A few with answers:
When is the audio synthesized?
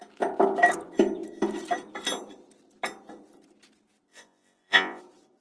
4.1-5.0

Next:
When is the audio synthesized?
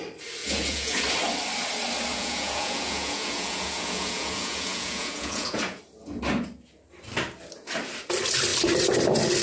0.4-1.0; 2.1-5.8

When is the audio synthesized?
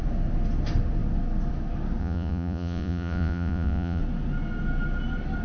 2.0-4.0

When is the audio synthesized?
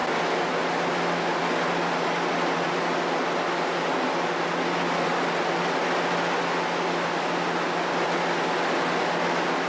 none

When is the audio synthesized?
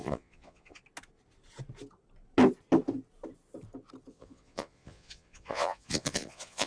0.0-0.8; 4.1-6.7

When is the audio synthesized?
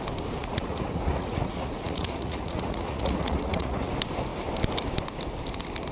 0.4-3.9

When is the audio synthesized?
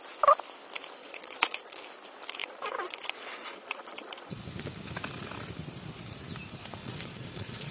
1.0-1.8; 2.4-4.4; 6.8-7.7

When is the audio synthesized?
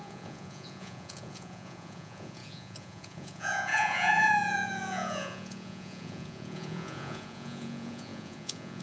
0.0-8.8